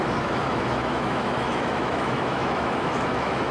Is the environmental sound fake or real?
fake